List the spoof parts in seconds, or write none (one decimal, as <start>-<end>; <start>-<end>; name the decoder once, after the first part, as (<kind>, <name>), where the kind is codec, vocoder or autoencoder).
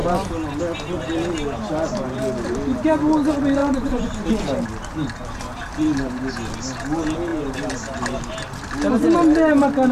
3.6-4.3 (vocoder, BigVGAN v2)